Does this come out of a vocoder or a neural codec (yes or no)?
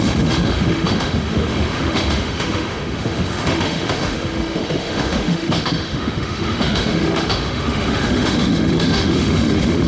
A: yes